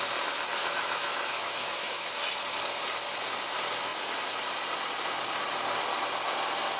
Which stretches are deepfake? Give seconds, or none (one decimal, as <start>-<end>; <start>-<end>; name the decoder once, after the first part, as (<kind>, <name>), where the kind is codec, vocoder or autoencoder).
0.6-2.1 (autoencoder, DAC-VAE)